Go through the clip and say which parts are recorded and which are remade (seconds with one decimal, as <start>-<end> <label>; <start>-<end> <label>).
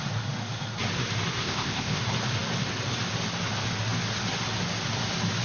0.0-1.4 recorded; 1.4-2.0 remade; 2.0-5.4 recorded